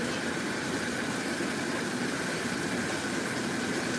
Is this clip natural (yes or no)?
yes